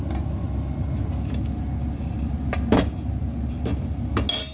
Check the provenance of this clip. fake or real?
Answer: real